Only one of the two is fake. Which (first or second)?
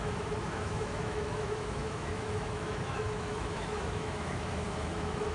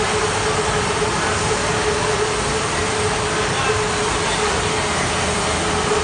first